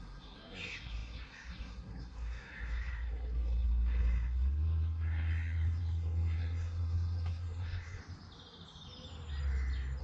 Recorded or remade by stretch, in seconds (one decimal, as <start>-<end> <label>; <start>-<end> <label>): 0.0-8.0 remade; 8.0-10.0 recorded